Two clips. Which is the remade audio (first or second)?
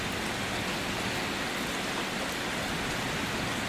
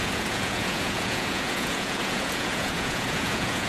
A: second